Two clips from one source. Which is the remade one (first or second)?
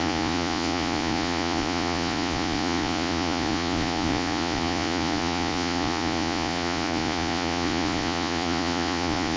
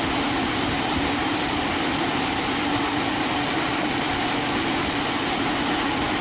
first